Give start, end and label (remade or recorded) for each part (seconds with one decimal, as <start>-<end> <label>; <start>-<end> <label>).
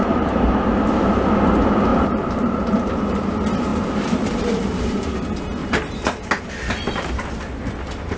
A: 0.0-1.1 remade; 1.1-1.9 recorded; 1.9-3.0 remade; 3.0-3.7 recorded; 3.7-5.1 remade; 5.1-5.6 recorded; 5.6-6.3 remade; 6.3-8.2 recorded